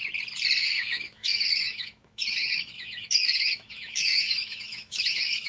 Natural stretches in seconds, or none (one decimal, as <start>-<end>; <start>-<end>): 0.0-0.6